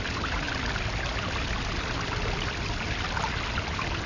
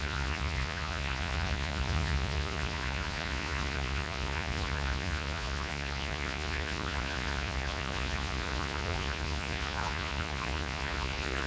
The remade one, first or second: second